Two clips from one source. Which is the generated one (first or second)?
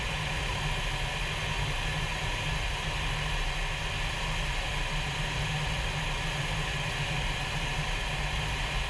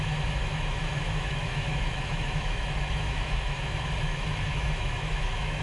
second